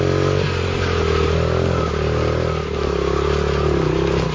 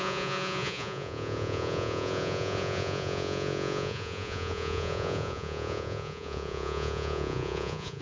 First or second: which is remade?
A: second